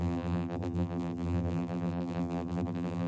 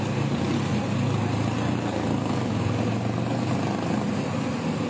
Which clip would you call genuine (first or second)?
second